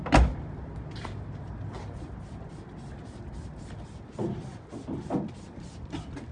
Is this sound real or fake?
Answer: real